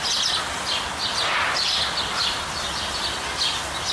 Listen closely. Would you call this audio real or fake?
real